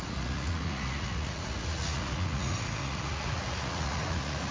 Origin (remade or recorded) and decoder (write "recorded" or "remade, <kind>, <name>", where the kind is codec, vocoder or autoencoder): remade, vocoder, Vocos